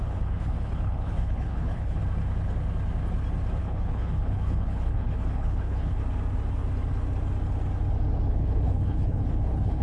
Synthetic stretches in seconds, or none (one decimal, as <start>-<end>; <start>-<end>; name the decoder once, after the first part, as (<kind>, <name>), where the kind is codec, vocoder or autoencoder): 0.0-2.0 (codec, HILCodec); 3.6-6.0; 8.3-9.8